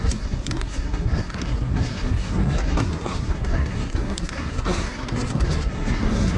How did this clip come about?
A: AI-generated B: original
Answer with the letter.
A